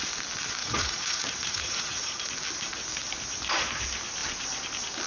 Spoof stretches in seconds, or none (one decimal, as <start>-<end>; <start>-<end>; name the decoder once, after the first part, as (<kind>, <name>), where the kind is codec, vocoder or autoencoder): 0.6-2.3 (vocoder, Vocos)